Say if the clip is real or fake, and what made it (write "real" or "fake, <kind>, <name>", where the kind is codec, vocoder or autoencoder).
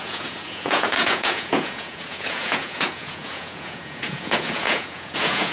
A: fake, vocoder, Vocos